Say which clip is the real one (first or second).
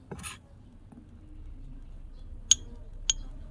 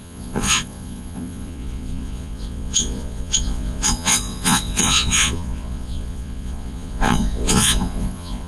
first